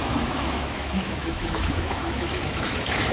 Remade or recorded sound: remade